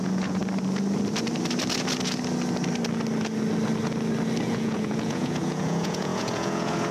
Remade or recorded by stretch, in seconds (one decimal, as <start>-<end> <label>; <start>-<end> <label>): 0.0-0.4 remade; 0.4-4.5 recorded; 4.5-6.9 remade